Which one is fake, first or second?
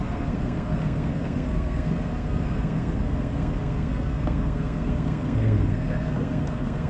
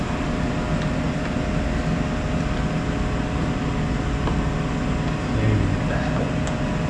first